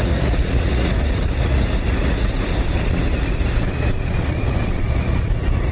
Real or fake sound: fake